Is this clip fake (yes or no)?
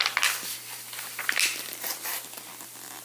yes